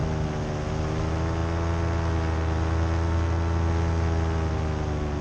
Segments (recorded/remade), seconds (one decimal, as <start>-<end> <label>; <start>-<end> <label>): 0.0-5.2 recorded